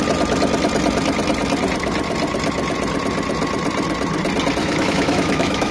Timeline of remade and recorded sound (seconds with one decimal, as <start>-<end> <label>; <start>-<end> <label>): 0.0-4.6 recorded; 4.6-5.7 remade

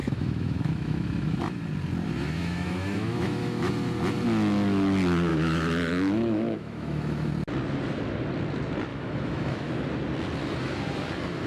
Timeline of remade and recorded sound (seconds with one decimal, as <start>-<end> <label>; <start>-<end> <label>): 0.0-1.4 remade; 1.4-2.4 recorded; 2.4-3.7 remade; 3.7-5.3 recorded; 5.3-7.3 remade; 7.3-8.9 recorded; 8.9-9.7 remade; 9.7-11.5 recorded

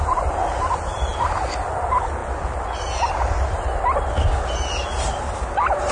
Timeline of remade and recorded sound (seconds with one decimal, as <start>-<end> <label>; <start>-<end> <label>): 0.0-5.9 recorded

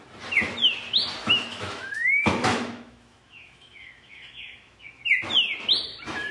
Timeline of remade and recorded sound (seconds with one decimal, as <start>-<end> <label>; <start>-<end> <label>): 0.0-1.2 recorded; 1.2-5.0 remade; 5.0-6.3 recorded

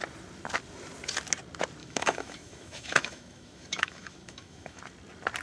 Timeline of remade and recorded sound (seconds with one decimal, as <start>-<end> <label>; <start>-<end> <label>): 0.0-1.8 recorded; 1.8-4.8 remade; 4.8-5.4 recorded

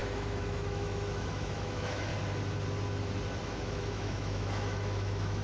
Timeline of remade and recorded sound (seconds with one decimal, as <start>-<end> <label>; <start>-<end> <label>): 0.0-2.1 remade; 2.1-3.4 recorded; 3.4-5.4 remade